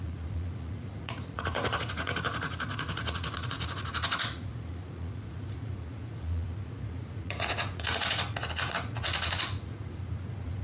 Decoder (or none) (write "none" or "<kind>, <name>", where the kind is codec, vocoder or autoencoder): vocoder, Vocos